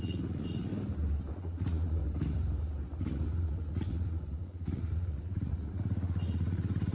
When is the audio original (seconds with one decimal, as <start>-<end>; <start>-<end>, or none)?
0.7-1.3; 2.0-3.0